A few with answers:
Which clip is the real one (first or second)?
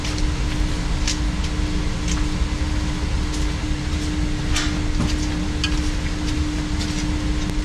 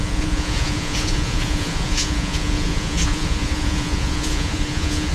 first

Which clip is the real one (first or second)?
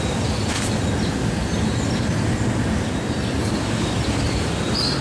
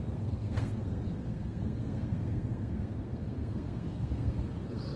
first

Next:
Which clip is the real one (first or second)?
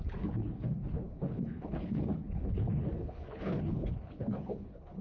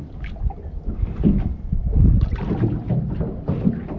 second